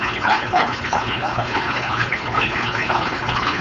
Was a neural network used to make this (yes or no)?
yes